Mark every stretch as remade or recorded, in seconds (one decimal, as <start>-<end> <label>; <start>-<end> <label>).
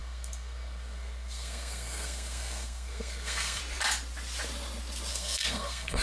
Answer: 0.0-3.6 remade; 3.6-5.1 recorded; 5.1-6.0 remade